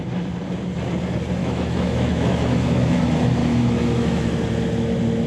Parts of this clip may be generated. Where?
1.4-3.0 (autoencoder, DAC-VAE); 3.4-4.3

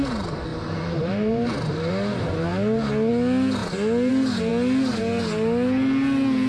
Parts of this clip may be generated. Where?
0.5-1.9 (vocoder, BigVGAN v2)

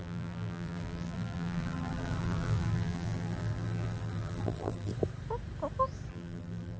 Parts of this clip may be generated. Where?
0.0-4.9 (vocoder, BigVGAN v2); 6.1-6.8

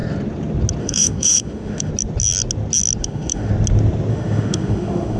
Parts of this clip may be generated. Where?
0.8-1.9 (autoencoder, DAC-VAE); 3.0-3.5; 4.1-5.2

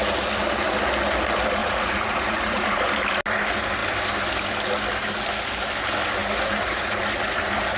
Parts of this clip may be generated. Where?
1.6-2.8 (vocoder, Vocos)

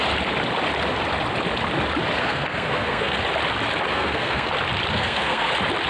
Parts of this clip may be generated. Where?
2.2-3.2 (codec, SNAC); 3.9-4.5; 4.9-5.5

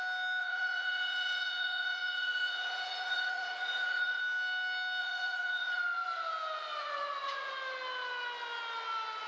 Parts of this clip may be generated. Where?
0.4-4.2 (vocoder, Vocos); 5.0-5.8; 6.8-7.5